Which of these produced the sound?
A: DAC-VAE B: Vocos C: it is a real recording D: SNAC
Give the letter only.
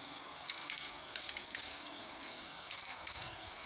D